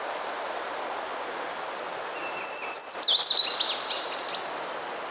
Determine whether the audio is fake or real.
real